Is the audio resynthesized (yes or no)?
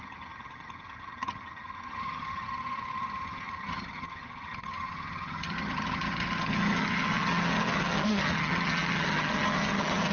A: yes